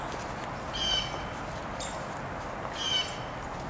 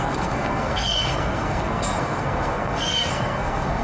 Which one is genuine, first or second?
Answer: first